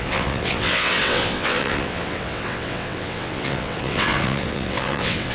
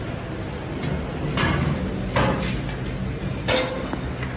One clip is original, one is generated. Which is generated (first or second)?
first